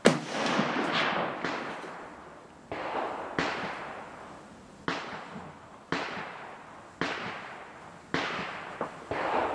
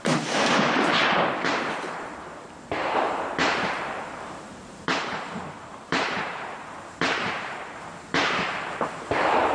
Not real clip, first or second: second